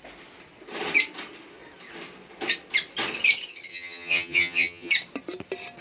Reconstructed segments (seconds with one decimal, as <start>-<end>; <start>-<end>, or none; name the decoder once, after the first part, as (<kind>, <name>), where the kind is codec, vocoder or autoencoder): 3.7-4.9 (vocoder, HiFi-GAN)